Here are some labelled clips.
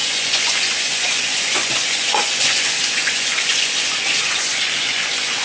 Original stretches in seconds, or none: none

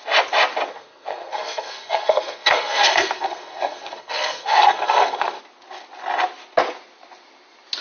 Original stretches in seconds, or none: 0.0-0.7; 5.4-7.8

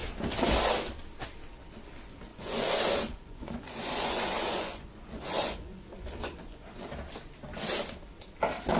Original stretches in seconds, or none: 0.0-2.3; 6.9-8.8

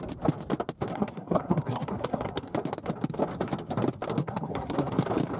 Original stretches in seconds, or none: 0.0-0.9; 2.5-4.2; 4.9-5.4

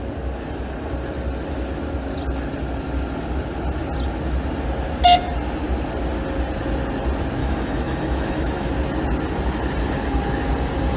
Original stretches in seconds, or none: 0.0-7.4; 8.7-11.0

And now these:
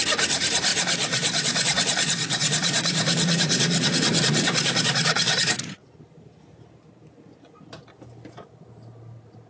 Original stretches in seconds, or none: 0.0-0.7; 5.9-9.5